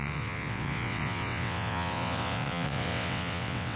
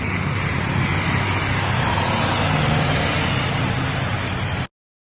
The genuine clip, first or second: second